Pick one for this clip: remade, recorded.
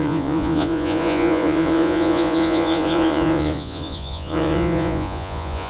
remade